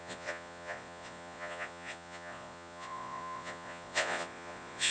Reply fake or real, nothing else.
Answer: fake